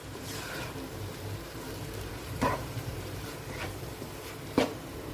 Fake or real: fake